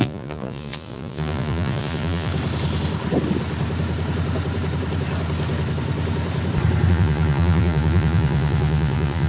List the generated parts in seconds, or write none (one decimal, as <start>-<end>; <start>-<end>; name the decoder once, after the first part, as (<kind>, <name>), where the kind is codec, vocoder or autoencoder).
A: 0.0-2.3 (vocoder, Vocos); 6.9-9.3